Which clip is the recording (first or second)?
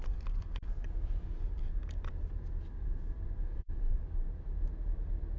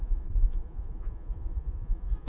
first